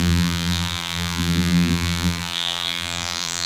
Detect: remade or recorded remade